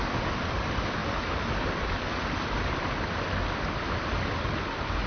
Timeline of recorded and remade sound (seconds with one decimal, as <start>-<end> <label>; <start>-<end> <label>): 0.0-5.1 recorded